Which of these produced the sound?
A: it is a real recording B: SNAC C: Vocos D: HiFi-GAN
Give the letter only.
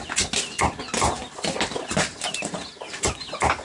A